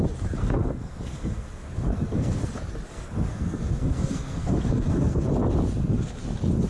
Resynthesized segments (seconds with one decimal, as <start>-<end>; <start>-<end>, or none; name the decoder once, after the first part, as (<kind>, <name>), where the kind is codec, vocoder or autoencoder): 0.4-2.5 (codec, SNAC); 2.9-5.3